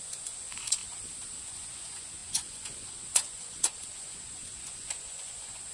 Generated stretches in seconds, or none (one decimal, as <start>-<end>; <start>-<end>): 0.0-0.8; 1.4-5.7